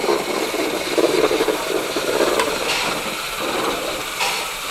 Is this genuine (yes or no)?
no